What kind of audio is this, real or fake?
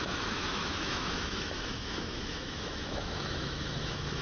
fake